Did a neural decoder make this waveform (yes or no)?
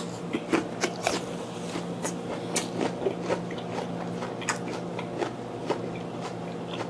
no